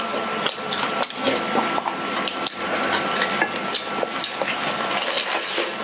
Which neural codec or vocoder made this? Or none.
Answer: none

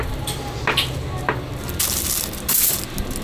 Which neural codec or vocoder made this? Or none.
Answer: none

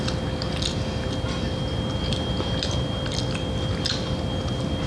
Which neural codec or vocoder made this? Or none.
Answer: none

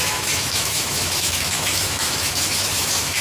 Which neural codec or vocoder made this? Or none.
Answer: autoencoder, DAC-VAE